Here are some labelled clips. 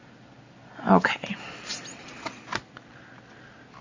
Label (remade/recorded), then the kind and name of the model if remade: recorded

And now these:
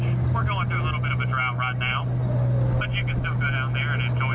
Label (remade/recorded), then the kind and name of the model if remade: recorded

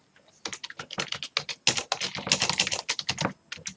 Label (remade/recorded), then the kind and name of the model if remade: recorded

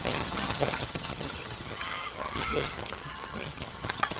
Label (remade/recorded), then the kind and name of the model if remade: remade, vocoder, HiFi-GAN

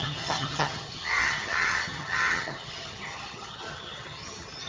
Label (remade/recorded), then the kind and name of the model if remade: remade, vocoder, HiFi-GAN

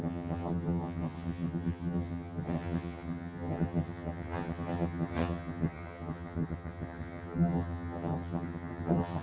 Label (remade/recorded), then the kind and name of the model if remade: remade, vocoder, HiFi-GAN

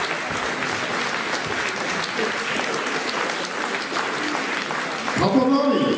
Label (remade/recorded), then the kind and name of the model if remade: recorded